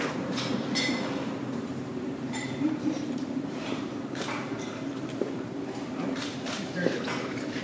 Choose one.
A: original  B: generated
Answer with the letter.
B